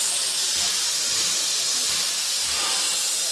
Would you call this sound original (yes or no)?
yes